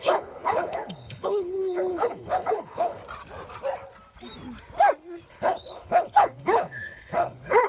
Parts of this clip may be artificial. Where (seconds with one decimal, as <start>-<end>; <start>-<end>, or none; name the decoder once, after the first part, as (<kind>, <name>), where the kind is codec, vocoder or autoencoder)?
0.0-3.0 (codec, HILCodec); 5.3-7.7